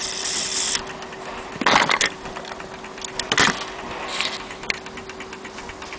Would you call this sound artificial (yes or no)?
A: no